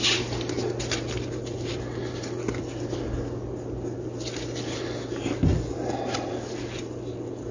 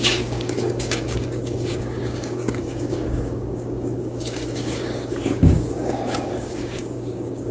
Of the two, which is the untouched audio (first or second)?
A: first